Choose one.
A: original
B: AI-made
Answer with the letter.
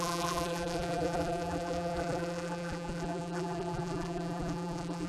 B